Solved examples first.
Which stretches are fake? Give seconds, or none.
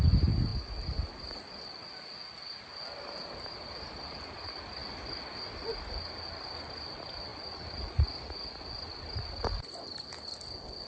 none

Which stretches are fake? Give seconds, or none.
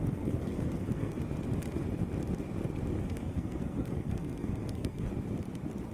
0.0-1.2 (codec, SNAC); 3.0-5.1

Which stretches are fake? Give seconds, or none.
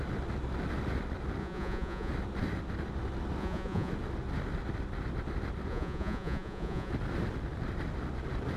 1.4-2.1 (vocoder, Vocos); 3.4-3.9; 5.7-6.9